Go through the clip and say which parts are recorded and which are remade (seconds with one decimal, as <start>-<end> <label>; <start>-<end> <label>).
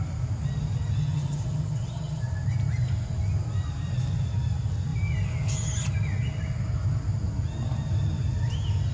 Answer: 0.0-1.0 recorded; 1.0-2.2 remade; 2.2-8.9 recorded